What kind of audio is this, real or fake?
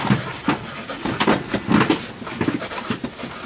real